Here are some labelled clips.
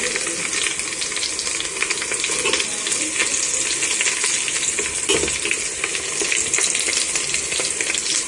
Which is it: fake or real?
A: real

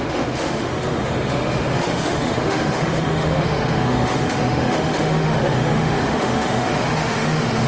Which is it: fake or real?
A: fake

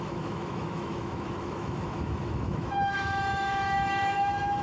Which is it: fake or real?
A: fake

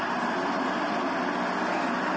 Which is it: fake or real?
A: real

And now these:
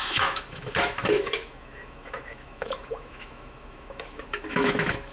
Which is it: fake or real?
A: fake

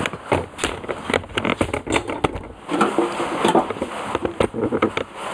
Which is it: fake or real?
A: real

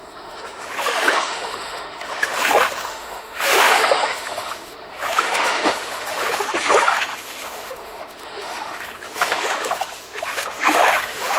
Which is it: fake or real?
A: fake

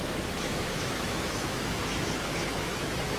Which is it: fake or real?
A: fake